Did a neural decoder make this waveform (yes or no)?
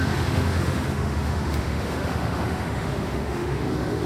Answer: yes